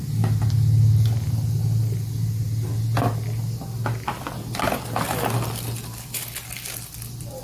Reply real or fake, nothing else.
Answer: real